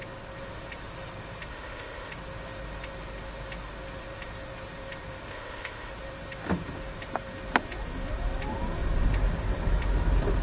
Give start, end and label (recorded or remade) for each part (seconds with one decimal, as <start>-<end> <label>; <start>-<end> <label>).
0.0-1.5 recorded; 1.5-2.1 remade; 2.1-5.3 recorded; 5.3-5.9 remade; 5.9-10.4 recorded